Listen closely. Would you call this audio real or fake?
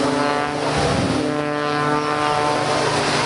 real